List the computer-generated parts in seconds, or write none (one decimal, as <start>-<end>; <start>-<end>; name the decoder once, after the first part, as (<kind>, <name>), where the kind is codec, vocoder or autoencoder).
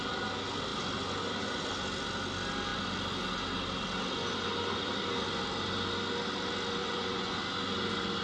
6.8-7.4 (vocoder, Vocos)